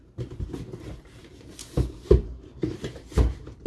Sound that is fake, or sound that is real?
fake